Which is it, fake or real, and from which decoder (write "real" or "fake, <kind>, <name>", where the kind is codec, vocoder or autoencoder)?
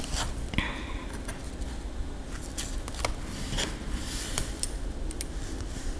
real